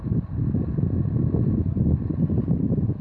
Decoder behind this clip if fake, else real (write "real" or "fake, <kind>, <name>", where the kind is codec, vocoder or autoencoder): real